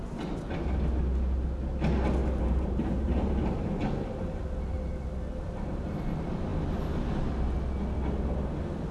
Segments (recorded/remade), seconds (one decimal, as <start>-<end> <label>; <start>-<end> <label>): 0.0-2.2 recorded; 2.2-4.4 remade; 4.4-8.9 recorded